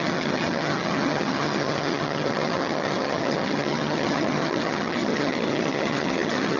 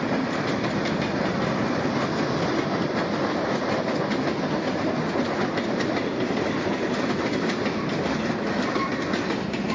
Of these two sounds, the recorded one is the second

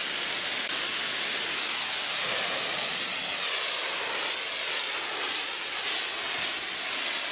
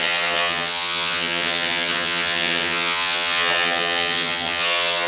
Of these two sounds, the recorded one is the first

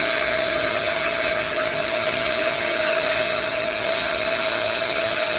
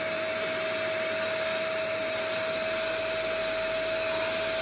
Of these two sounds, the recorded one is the second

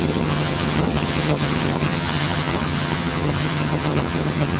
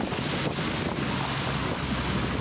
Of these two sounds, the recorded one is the second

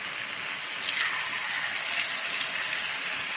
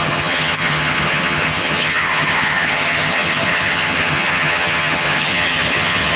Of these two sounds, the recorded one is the first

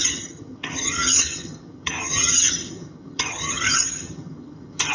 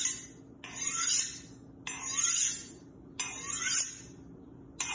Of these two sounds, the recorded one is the second